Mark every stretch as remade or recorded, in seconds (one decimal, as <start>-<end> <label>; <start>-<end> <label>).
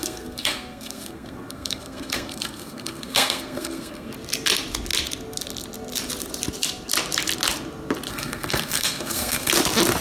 0.0-4.1 remade; 4.1-8.1 recorded; 8.1-9.5 remade; 9.5-10.0 recorded